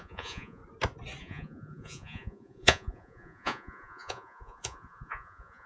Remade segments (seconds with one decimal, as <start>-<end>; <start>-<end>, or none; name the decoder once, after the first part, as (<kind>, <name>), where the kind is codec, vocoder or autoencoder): 0.0-0.6 (vocoder, Vocos); 1.2-5.7